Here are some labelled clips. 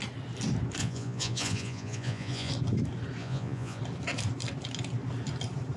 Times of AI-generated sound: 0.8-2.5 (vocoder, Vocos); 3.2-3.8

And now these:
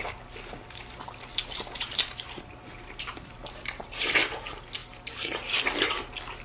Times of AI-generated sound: 1.3-4.1 (vocoder, BigVGAN v2)

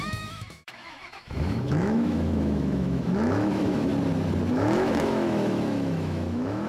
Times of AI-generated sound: 0.0-3.9 (autoencoder, DAC-VAE); 4.5-6.7